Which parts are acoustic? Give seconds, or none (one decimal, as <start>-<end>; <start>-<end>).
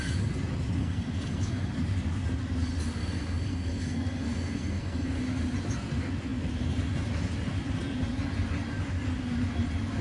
0.0-0.8; 1.7-3.0; 5.2-10.0